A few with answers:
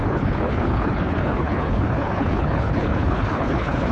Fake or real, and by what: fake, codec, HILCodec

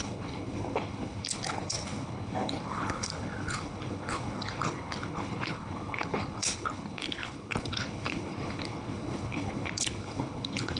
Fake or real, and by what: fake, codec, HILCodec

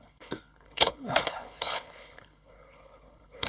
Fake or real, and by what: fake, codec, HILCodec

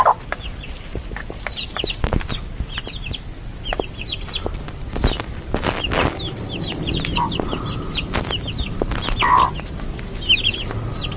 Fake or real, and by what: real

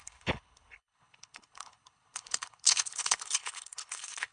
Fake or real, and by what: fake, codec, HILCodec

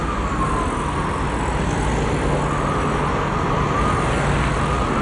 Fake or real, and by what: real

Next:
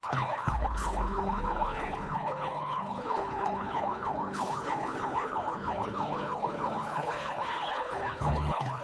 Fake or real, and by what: fake, codec, HILCodec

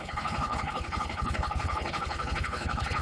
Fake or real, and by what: fake, codec, HILCodec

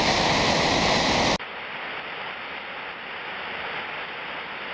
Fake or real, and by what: real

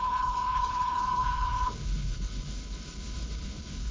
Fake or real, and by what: fake, codec, HILCodec